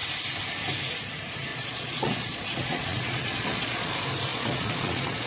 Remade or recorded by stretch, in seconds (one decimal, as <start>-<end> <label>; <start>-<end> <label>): 0.0-1.5 recorded; 1.5-3.9 remade; 3.9-4.3 recorded; 4.3-5.3 remade